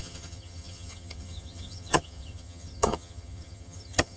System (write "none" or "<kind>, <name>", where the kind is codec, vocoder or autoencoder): vocoder, HiFi-GAN